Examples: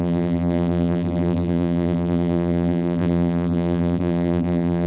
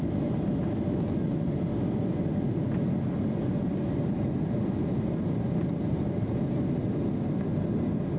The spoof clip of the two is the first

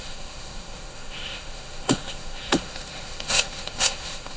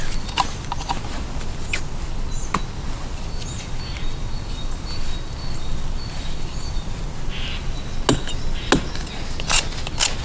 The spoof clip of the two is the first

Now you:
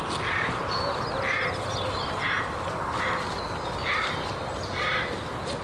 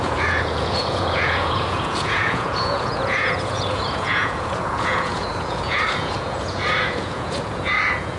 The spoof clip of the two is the second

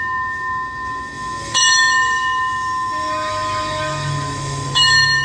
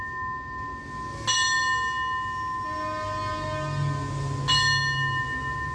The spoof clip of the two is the first